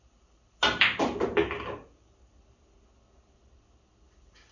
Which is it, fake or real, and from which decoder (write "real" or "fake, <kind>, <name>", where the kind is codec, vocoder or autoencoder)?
real